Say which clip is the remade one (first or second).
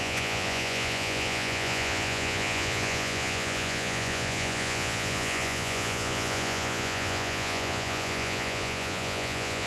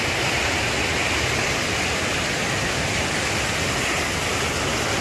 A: first